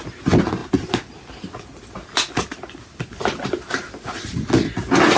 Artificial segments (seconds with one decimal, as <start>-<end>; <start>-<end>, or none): none